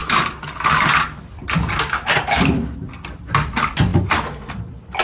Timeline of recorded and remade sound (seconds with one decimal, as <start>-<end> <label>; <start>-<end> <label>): 0.0-5.0 remade